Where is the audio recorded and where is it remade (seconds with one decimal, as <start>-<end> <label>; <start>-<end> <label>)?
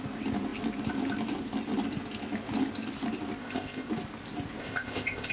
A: 0.0-3.4 recorded; 3.4-3.9 remade; 3.9-4.6 recorded; 4.6-5.3 remade